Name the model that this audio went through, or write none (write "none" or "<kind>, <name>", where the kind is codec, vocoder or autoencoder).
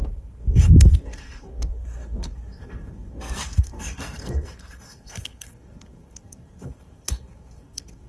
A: codec, SNAC